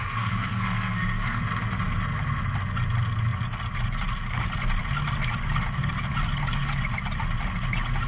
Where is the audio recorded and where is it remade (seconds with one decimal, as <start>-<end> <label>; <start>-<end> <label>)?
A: 0.0-1.4 remade; 1.4-8.1 recorded